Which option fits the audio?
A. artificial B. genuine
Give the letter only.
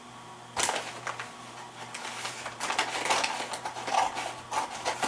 B